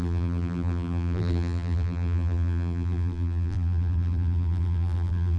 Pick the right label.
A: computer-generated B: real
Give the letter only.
A